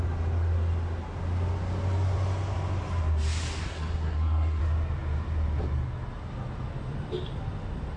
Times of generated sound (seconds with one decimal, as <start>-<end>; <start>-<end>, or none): 3.6-4.6